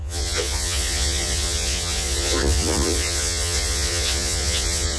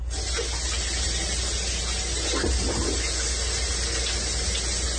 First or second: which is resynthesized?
first